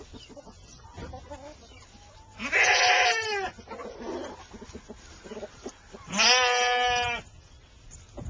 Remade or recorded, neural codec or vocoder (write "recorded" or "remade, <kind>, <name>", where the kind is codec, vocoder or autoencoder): recorded